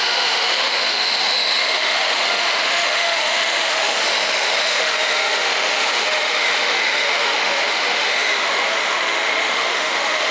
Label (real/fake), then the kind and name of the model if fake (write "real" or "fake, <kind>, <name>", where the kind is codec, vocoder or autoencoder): fake, autoencoder, DAC-VAE